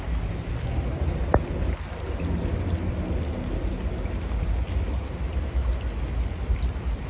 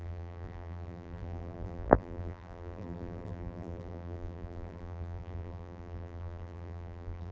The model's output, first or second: second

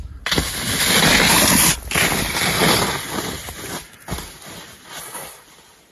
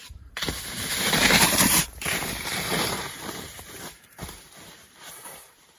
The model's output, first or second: second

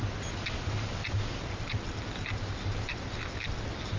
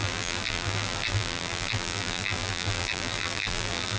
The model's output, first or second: second